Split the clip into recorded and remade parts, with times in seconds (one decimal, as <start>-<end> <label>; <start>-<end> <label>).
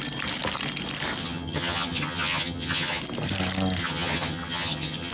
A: 0.0-1.2 recorded; 1.2-3.0 remade; 3.0-3.8 recorded; 3.8-5.1 remade